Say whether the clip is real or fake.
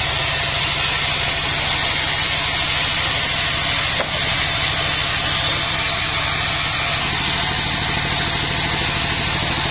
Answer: real